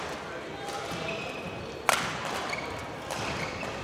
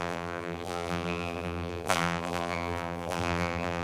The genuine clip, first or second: first